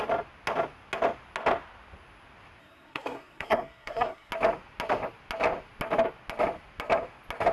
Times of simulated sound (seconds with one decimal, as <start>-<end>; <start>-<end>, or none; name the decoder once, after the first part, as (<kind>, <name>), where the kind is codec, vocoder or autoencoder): 2.6-4.3 (codec, SNAC)